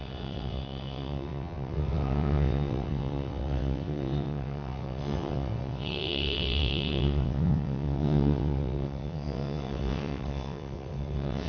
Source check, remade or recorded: remade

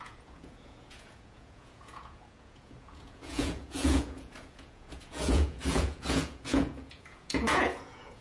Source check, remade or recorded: remade